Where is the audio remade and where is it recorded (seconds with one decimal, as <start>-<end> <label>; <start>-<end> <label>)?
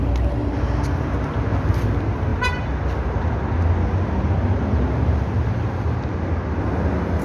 0.0-7.2 recorded